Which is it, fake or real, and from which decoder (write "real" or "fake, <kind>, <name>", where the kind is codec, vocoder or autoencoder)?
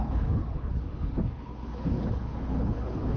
fake, codec, HILCodec